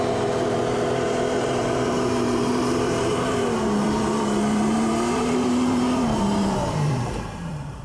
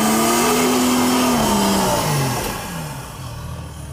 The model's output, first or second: first